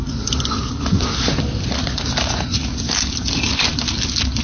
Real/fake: real